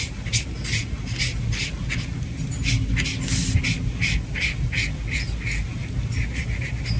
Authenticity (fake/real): real